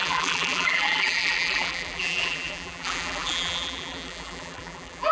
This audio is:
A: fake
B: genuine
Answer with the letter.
A